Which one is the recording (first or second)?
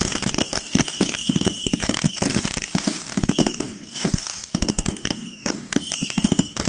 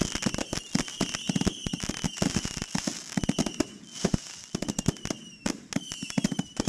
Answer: second